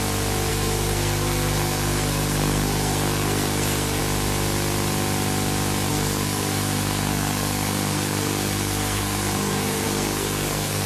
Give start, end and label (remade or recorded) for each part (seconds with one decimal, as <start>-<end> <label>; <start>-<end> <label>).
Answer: 0.0-0.5 recorded; 0.5-4.0 remade; 4.0-5.9 recorded; 5.9-10.9 remade